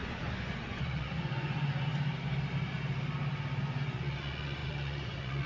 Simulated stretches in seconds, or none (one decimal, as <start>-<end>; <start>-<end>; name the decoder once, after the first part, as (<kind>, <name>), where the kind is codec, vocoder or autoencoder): 0.0-1.9 (vocoder, Vocos); 3.6-5.5